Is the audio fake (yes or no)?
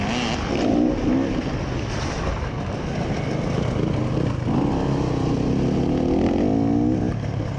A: no